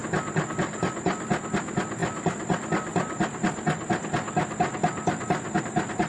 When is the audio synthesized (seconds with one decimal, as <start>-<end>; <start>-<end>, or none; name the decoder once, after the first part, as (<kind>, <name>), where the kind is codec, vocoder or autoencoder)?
none